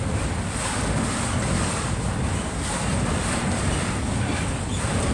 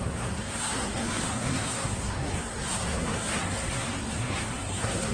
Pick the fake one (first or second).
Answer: second